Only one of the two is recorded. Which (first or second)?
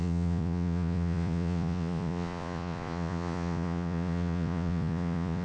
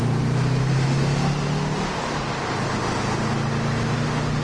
second